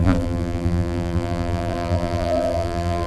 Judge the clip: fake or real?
fake